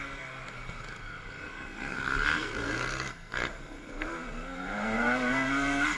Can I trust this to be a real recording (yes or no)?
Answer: no